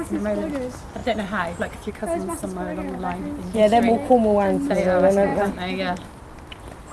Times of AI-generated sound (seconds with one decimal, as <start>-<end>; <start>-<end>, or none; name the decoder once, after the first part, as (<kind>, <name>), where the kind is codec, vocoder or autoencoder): none